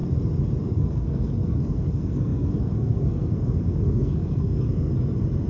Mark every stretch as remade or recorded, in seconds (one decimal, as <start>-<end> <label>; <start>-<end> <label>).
0.0-0.6 recorded; 0.6-4.9 remade; 4.9-5.5 recorded